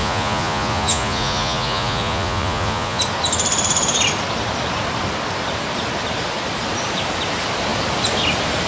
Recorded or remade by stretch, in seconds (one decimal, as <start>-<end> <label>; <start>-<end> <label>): 0.0-3.0 remade; 3.0-8.7 recorded